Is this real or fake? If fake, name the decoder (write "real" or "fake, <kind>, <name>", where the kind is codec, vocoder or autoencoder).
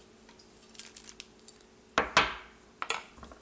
real